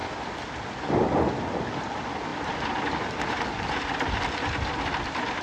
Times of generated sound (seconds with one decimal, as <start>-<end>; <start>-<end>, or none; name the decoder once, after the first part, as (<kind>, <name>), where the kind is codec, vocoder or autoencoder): 0.0-1.3 (vocoder, BigVGAN v2); 2.3-3.3